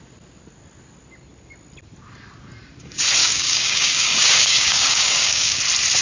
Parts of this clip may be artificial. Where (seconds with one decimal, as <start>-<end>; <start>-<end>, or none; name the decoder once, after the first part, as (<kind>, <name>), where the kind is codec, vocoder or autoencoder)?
3.2-5.6 (codec, DAC)